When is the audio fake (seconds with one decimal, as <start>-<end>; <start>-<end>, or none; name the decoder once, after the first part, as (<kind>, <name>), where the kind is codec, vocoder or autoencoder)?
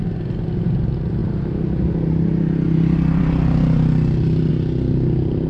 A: none